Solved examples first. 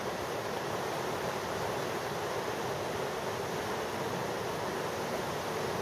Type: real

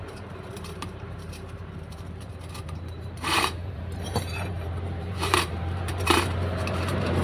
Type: fake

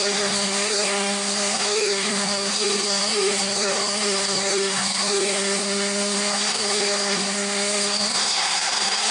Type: fake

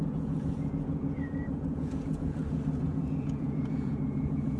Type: fake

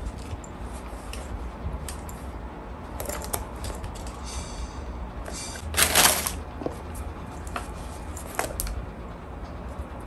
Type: real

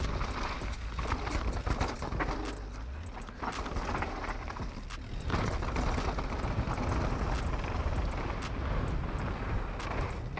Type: real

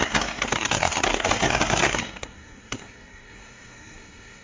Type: fake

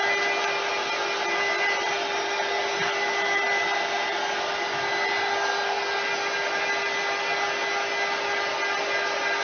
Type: real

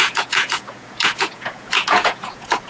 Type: fake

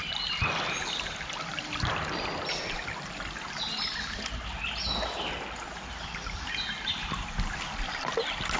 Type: real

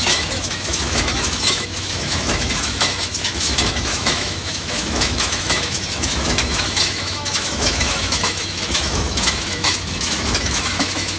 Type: fake